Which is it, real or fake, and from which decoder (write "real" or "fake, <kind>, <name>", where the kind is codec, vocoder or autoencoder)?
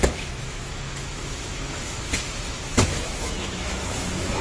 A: fake, autoencoder, DAC-VAE